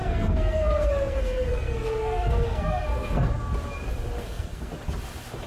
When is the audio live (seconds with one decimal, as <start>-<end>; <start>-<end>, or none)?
3.3-4.2; 4.7-5.5